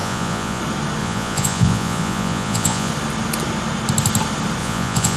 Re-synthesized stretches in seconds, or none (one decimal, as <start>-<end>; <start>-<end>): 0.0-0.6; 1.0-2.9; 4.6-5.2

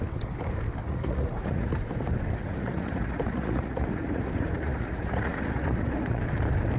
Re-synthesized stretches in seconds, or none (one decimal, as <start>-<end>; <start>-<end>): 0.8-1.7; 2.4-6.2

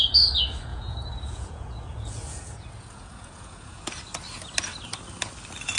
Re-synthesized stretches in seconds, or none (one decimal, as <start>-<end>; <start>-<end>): 0.7-4.0

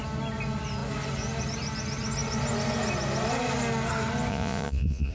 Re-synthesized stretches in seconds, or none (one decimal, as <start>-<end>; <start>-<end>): 4.3-5.1

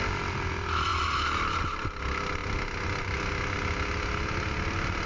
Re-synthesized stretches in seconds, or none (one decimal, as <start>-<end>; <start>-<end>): none

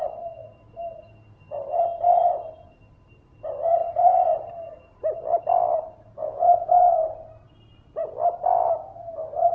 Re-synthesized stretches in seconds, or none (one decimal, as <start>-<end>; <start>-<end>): 6.2-6.8